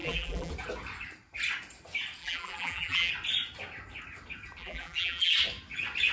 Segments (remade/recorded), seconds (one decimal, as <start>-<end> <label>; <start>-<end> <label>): 0.0-0.5 remade; 0.5-2.2 recorded; 2.2-3.1 remade; 3.1-4.6 recorded; 4.6-5.3 remade; 5.3-6.1 recorded